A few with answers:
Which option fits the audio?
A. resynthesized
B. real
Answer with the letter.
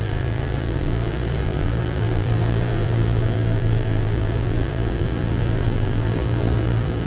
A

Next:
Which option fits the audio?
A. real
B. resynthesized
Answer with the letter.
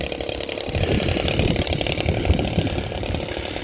A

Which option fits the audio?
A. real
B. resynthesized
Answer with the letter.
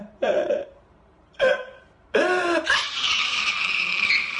B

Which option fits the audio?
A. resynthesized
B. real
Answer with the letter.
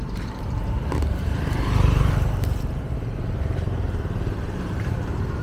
A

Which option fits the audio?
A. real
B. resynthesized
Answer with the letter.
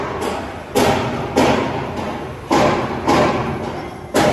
A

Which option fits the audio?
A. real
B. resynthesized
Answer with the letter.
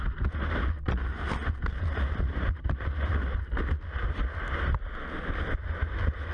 A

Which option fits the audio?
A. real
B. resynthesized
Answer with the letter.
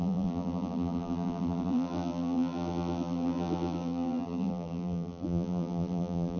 B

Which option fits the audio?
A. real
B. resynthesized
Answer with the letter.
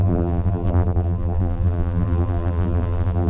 B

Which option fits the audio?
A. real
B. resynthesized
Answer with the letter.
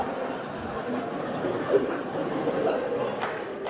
B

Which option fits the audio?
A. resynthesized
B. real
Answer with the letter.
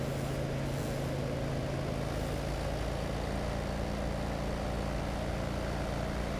B